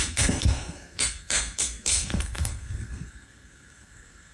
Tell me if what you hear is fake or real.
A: fake